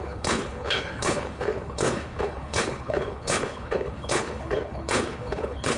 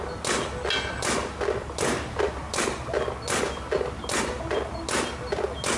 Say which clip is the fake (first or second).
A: first